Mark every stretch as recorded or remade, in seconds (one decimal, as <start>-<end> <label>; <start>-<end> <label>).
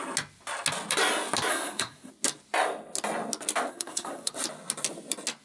0.0-1.5 recorded; 1.5-2.1 remade; 2.1-3.7 recorded; 3.7-4.3 remade; 4.3-5.4 recorded